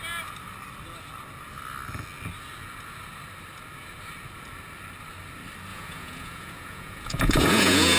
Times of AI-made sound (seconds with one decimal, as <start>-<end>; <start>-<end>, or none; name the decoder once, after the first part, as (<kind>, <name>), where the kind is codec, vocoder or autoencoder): 5.7-8.0 (vocoder, Vocos)